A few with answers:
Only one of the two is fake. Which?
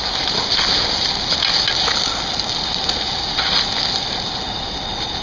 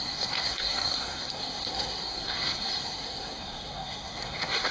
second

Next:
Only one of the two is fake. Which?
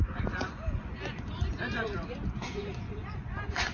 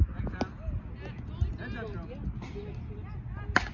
first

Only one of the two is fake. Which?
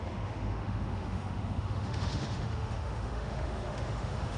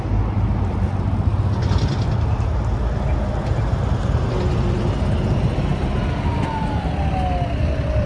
first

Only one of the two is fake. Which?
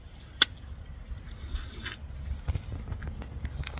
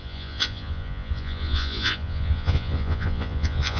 second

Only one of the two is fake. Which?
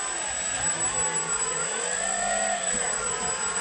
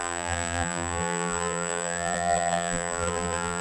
second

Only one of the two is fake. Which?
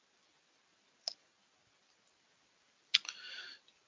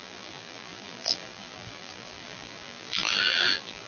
second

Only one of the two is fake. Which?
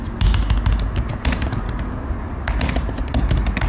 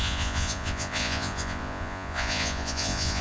second